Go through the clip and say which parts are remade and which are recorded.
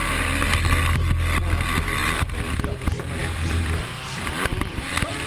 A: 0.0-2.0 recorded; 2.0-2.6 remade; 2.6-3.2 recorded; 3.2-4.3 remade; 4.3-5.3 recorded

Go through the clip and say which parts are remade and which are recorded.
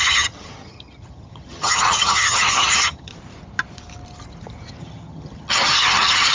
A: 0.0-3.1 remade; 3.1-4.8 recorded; 4.8-6.3 remade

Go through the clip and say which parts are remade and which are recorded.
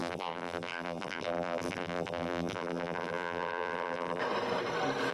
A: 0.0-4.2 remade; 4.2-5.1 recorded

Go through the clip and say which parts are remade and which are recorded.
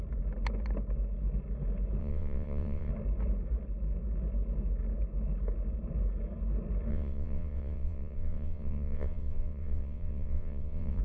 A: 0.0-2.0 recorded; 2.0-2.9 remade; 2.9-6.9 recorded; 6.9-11.0 remade